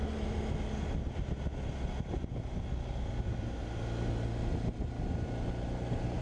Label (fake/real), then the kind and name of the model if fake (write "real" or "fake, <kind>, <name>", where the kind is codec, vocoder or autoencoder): real